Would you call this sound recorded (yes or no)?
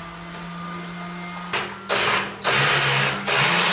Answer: yes